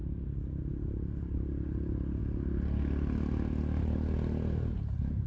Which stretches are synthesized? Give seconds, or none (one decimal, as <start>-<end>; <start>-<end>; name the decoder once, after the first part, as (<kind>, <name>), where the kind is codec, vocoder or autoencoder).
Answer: 0.6-2.2 (vocoder, BigVGAN v2); 3.8-5.3

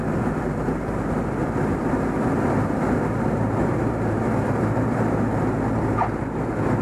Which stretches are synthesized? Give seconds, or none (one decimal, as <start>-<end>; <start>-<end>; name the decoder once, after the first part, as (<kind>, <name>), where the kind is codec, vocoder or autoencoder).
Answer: 1.7-5.2 (vocoder, BigVGAN v2)

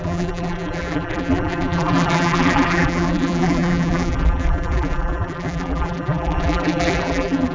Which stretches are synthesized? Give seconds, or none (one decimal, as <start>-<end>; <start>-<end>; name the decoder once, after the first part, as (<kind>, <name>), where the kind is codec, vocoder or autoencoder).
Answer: 0.0-7.5 (vocoder, BigVGAN v2)

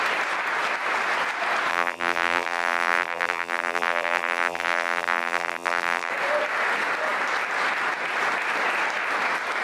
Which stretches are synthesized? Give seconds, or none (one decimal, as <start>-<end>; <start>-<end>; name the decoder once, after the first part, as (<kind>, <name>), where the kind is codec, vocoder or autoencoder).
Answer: 1.7-6.1 (vocoder, BigVGAN v2)

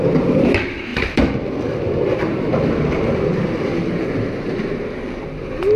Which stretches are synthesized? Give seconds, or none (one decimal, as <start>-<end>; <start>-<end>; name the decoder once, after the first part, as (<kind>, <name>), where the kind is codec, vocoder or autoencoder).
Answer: 0.9-3.9 (vocoder, BigVGAN v2)

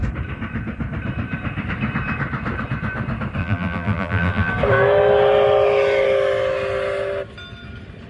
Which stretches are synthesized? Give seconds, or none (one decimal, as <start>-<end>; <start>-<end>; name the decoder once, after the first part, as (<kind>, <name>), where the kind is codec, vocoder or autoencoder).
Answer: 3.4-4.5 (vocoder, BigVGAN v2)

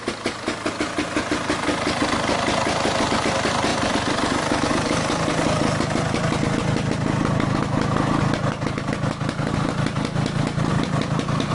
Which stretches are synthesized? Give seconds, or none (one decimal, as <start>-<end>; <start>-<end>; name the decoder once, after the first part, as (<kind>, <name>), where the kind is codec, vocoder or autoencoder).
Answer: 3.7-4.3 (vocoder, BigVGAN v2); 10.7-11.5